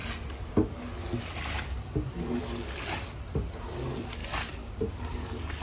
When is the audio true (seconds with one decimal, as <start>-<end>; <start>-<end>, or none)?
0.0-5.6